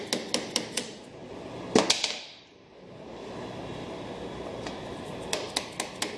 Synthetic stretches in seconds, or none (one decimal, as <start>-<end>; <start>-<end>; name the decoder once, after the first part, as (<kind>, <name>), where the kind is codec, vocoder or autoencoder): none